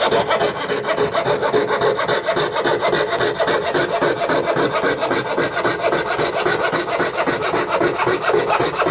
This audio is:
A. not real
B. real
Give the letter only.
B